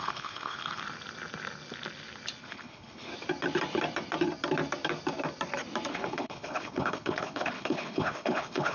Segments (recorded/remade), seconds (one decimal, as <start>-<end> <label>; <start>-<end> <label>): 0.0-0.8 remade; 0.8-2.4 recorded; 2.4-3.1 remade; 3.1-5.9 recorded; 5.9-8.7 remade